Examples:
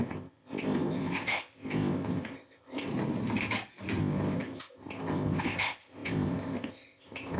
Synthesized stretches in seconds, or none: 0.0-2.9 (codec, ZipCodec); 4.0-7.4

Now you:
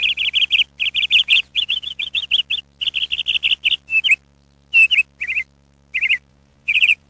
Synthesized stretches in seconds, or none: 1.2-2.2 (vocoder, Vocos); 6.3-7.1